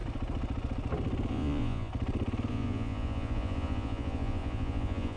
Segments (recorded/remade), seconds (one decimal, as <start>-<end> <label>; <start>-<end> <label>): 0.0-1.3 recorded; 1.3-1.9 remade; 1.9-2.5 recorded; 2.5-5.2 remade